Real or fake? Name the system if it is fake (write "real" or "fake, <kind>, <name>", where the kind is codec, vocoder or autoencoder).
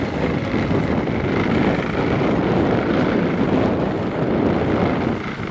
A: real